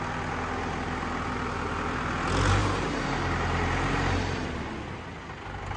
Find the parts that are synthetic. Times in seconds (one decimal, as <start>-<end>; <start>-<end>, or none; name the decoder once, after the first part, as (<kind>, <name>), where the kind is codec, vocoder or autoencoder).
2.6-4.7 (vocoder, BigVGAN v2)